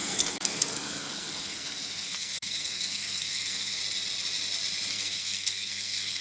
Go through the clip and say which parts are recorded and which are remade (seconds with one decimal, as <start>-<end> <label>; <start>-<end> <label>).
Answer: 0.0-3.8 remade; 3.8-4.9 recorded; 4.9-6.2 remade